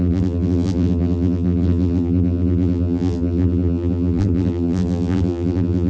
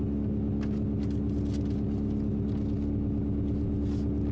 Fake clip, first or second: first